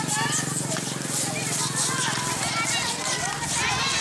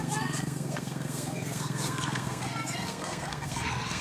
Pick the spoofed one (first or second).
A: second